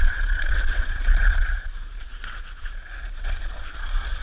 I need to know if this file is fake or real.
fake